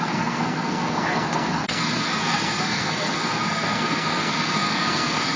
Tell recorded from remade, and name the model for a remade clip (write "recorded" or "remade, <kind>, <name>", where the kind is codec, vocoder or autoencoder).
remade, codec, SNAC